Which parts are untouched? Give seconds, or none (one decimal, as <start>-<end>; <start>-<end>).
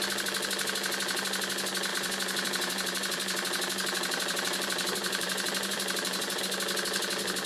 0.0-1.9; 6.4-7.5